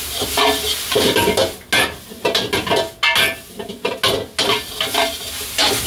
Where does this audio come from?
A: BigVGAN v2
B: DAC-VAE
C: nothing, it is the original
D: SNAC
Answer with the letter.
C